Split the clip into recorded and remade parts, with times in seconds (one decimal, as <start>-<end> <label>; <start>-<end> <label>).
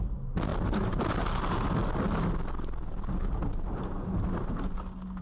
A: 0.0-5.2 recorded